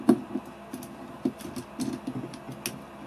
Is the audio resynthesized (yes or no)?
no